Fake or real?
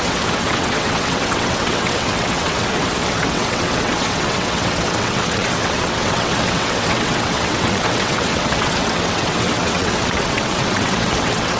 fake